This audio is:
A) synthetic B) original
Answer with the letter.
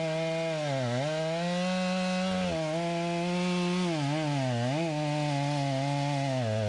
B